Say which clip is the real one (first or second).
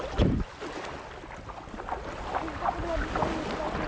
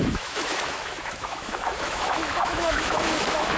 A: first